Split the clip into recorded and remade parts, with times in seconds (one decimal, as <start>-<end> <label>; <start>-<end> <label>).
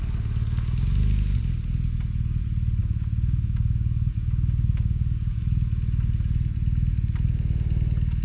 0.0-2.8 recorded; 2.8-5.4 remade; 5.4-8.2 recorded